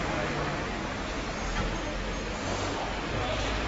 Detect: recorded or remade recorded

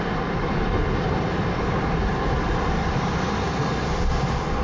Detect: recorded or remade recorded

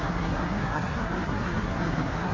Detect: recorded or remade remade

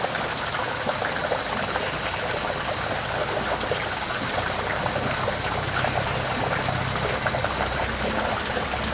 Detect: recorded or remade recorded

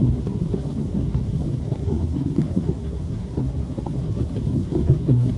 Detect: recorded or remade remade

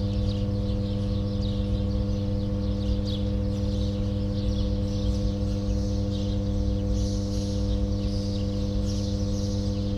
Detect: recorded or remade recorded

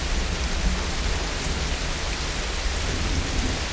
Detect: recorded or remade recorded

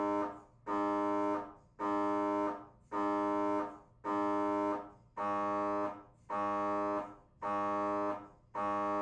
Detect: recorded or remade recorded